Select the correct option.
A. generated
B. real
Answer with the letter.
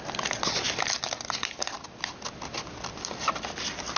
B